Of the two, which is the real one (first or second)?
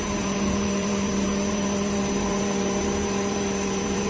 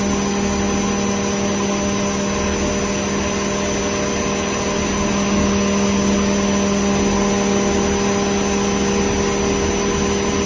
second